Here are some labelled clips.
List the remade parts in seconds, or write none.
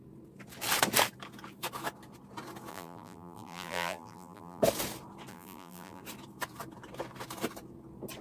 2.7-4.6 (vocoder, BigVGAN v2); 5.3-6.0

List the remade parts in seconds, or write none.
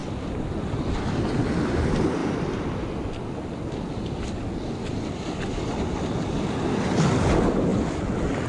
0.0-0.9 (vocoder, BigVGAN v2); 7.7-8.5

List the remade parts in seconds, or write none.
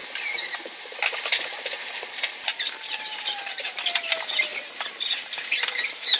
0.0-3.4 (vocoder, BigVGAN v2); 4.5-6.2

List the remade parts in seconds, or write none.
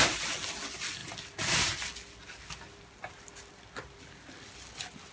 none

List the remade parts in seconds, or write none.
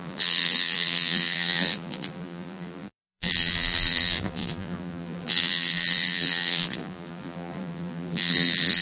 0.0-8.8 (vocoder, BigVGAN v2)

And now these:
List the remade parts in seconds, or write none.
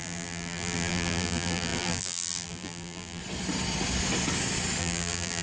0.0-3.2 (vocoder, BigVGAN v2); 4.8-5.4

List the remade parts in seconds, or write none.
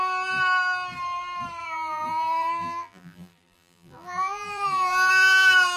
1.6-5.1 (vocoder, BigVGAN v2)